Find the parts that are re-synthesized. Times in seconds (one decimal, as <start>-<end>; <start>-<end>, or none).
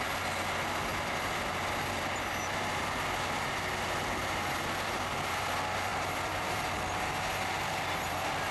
5.9-6.6